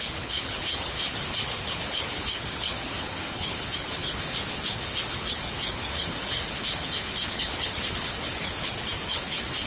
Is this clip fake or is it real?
fake